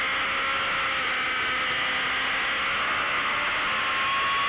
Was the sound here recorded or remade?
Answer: recorded